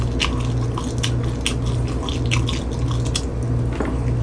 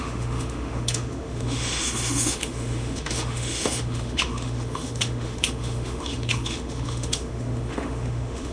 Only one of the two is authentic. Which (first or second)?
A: first